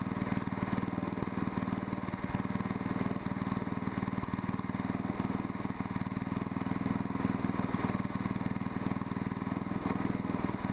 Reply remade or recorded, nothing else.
recorded